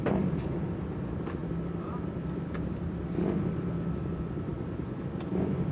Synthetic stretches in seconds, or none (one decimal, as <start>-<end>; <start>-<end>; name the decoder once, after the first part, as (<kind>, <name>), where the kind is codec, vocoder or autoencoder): 1.4-4.0 (vocoder, BigVGAN v2); 4.5-5.7